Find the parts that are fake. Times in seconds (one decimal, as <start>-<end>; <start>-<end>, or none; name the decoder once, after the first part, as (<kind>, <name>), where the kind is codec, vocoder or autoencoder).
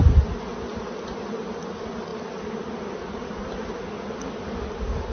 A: none